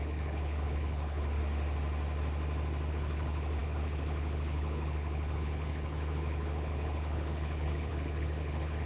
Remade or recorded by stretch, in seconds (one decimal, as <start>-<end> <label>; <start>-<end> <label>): 0.0-1.4 remade; 1.4-2.9 recorded; 2.9-8.9 remade